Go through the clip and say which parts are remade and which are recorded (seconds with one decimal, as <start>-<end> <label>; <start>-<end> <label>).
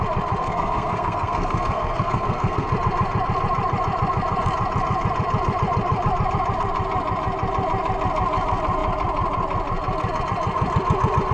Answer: 0.0-0.4 recorded; 0.4-2.7 remade; 2.7-11.3 recorded